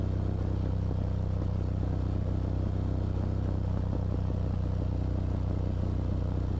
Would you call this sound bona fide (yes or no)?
yes